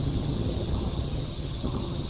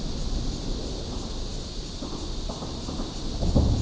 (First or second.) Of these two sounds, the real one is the second